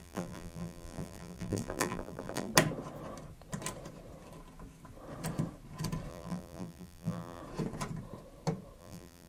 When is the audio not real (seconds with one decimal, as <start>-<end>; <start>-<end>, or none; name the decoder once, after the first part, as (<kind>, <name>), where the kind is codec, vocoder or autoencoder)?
0.0-2.5 (vocoder, BigVGAN v2); 6.1-7.4; 8.8-9.3